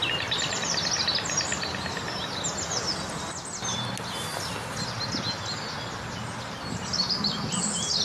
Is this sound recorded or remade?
recorded